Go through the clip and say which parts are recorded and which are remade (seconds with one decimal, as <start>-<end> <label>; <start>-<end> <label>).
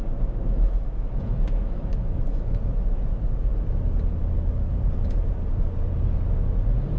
0.0-2.6 remade; 2.6-7.0 recorded